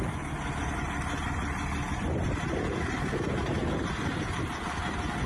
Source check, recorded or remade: recorded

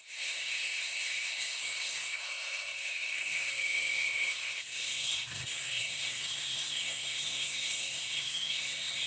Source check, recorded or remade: remade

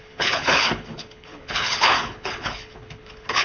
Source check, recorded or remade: remade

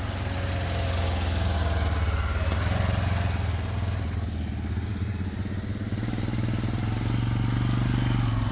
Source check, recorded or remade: recorded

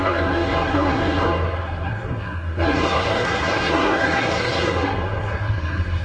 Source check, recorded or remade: remade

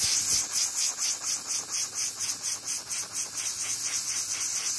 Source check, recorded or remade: recorded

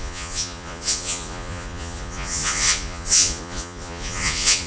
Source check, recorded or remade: remade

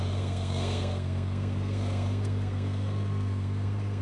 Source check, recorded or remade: remade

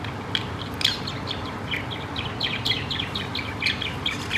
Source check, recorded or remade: recorded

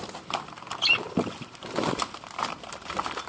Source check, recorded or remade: remade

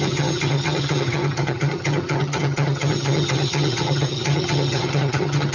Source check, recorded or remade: remade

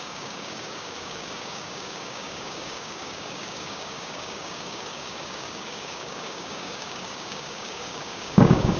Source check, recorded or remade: remade